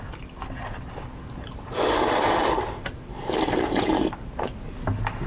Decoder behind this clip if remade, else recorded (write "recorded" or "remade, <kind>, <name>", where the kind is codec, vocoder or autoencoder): recorded